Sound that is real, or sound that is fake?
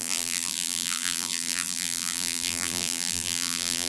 fake